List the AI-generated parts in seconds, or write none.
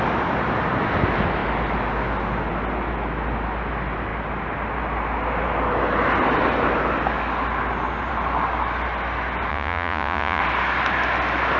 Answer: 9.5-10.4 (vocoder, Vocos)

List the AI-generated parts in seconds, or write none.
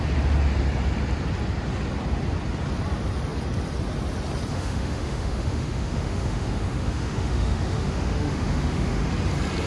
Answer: 4.5-9.1 (autoencoder, DAC-VAE)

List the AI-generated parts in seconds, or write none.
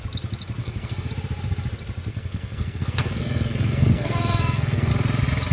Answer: 0.6-1.1 (codec, SNAC); 2.1-4.9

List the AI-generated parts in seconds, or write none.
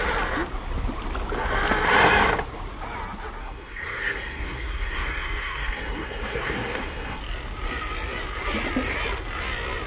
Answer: 3.4-7.2 (codec, SNAC)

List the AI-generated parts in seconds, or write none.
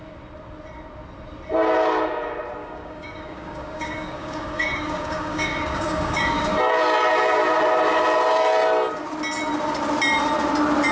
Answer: 2.6-6.7 (codec, DAC)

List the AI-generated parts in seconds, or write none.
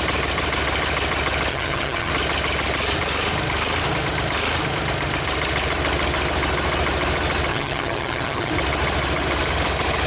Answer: 1.5-2.1 (vocoder, HiFi-GAN); 7.5-8.5